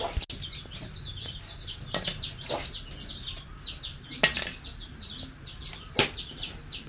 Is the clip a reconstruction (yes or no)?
no